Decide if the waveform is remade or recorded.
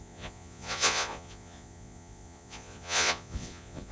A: remade